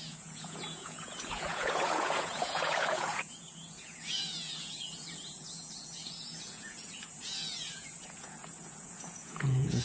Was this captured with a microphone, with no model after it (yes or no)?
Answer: no